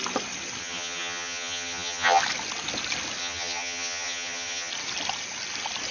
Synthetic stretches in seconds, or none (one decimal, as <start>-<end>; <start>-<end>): 0.6-2.2; 3.2-4.7